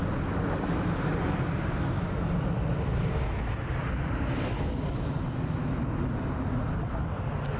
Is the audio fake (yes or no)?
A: no